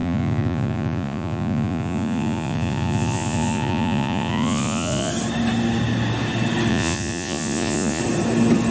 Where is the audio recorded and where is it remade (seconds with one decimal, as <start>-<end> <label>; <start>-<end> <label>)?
0.0-5.1 remade; 5.1-6.7 recorded; 6.7-8.0 remade; 8.0-8.7 recorded